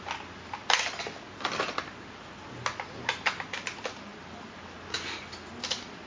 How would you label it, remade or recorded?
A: recorded